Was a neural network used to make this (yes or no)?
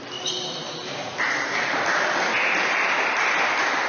no